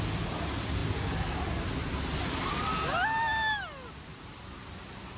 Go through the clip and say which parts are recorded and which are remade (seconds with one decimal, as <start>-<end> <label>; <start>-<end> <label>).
0.0-5.2 recorded